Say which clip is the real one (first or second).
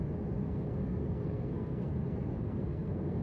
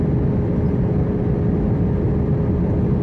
second